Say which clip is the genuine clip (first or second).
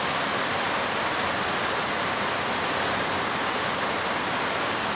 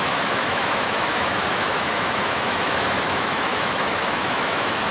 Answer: first